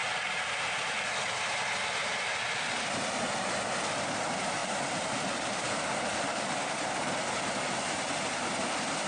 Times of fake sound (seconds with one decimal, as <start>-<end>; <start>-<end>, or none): 6.3-6.8